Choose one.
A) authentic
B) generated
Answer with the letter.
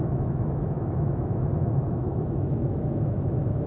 B